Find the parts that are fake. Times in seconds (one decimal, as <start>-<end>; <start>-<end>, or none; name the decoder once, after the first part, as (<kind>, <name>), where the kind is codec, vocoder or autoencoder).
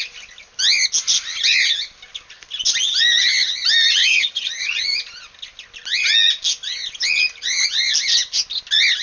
4.0-4.6 (vocoder, HiFi-GAN)